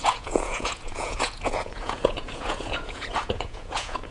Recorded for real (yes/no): no